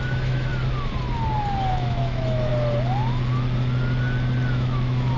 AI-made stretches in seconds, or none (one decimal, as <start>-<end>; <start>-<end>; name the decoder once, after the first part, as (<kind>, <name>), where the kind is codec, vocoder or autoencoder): 0.0-0.5 (autoencoder, DAC-VAE); 1.7-2.5; 4.5-5.2